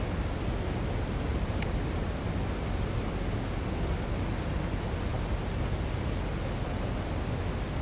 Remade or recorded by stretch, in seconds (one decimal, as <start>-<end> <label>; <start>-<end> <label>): 0.0-1.3 recorded; 1.3-2.7 remade; 2.7-7.8 recorded